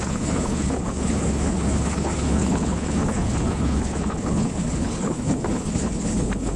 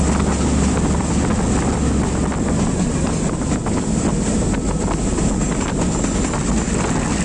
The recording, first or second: second